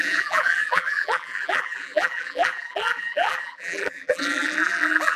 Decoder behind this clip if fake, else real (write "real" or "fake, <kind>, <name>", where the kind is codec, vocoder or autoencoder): fake, vocoder, BigVGAN v2